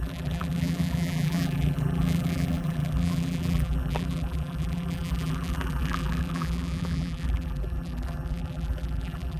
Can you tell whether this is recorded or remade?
remade